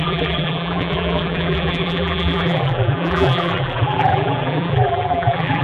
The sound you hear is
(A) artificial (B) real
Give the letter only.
A